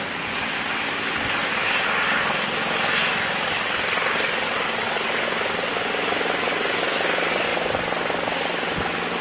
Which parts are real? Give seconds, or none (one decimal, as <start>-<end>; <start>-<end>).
0.0-9.2